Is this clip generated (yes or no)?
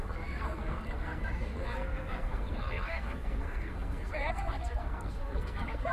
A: yes